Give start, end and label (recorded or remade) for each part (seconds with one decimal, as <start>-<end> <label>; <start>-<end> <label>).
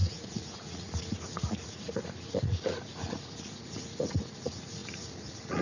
0.0-5.6 remade